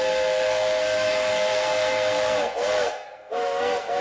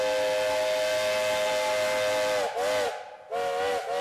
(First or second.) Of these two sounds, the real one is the second